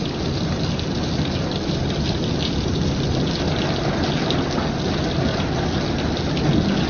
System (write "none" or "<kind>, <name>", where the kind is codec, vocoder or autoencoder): none